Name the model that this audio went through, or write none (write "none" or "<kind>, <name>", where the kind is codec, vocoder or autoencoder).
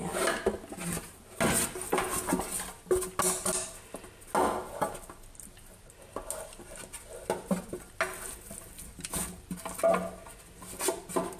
none